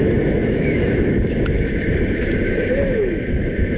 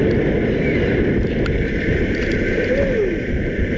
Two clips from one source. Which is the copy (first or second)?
first